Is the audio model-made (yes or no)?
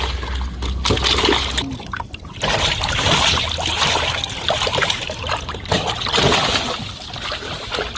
no